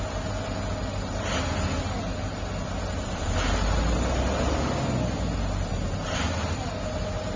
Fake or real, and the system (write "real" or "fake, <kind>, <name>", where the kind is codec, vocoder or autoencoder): real